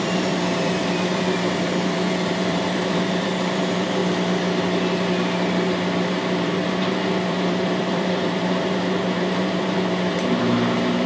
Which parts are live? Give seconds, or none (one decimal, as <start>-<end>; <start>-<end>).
4.0-6.1